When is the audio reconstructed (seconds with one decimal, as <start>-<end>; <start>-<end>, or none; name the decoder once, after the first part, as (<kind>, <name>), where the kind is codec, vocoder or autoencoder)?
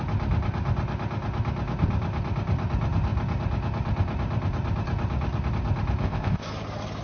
6.0-6.5 (codec, ZipCodec)